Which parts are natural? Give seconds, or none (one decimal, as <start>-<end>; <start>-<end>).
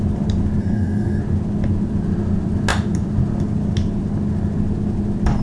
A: 0.0-0.6; 1.2-5.4